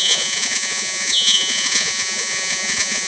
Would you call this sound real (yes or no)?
no